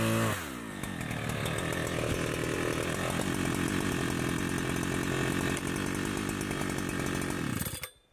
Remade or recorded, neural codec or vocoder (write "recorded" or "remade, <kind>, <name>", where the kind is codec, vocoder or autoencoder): recorded